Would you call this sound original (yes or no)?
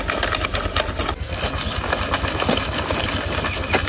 yes